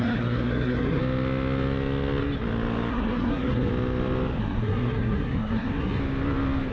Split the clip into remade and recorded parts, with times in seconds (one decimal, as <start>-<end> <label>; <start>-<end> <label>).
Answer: 0.0-1.0 remade; 1.0-2.9 recorded; 2.9-3.7 remade; 3.7-4.4 recorded; 4.4-6.0 remade; 6.0-6.7 recorded